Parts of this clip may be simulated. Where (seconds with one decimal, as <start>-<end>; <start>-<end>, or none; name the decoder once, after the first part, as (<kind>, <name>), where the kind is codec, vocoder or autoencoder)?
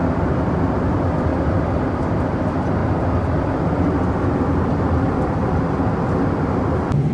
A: 0.0-1.3 (vocoder, BigVGAN v2); 1.8-2.8; 4.4-5.4; 6.6-7.1